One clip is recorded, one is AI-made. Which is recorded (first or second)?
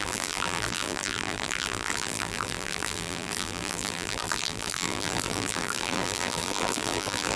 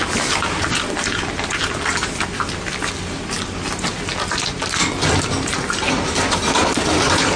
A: second